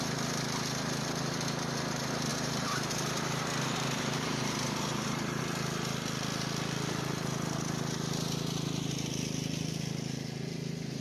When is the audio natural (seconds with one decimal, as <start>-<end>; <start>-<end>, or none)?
0.0-2.3; 5.4-11.0